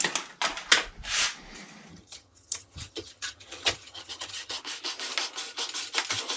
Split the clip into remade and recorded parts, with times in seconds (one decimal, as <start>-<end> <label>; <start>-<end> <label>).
0.0-1.9 recorded; 1.9-4.6 remade; 4.6-6.4 recorded